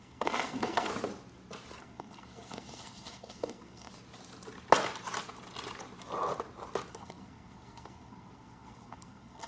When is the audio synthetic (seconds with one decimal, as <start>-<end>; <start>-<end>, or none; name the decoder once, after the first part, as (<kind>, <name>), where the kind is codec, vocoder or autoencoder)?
0.0-0.9 (codec, SNAC); 1.8-3.9; 6.9-9.5